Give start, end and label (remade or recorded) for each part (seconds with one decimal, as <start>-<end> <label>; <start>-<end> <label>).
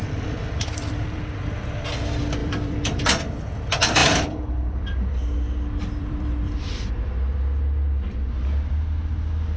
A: 0.0-1.4 remade; 1.4-2.4 recorded; 2.4-3.2 remade; 3.2-4.0 recorded; 4.0-6.9 remade; 6.9-9.6 recorded